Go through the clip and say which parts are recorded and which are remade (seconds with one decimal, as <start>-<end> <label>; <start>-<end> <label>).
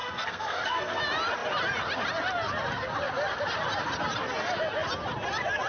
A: 0.0-1.0 remade; 1.0-5.7 recorded